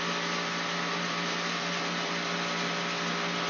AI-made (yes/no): no